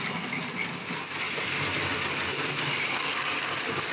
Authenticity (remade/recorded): recorded